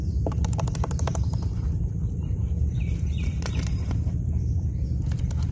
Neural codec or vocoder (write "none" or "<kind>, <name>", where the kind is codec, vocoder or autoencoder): vocoder, BigVGAN v2